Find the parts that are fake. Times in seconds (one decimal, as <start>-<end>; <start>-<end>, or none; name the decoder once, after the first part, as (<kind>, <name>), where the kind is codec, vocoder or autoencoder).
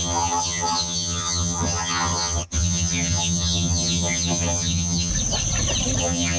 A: 0.0-5.1 (vocoder, HiFi-GAN); 6.0-6.4